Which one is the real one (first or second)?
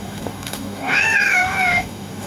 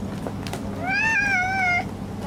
second